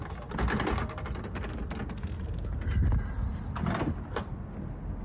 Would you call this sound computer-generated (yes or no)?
no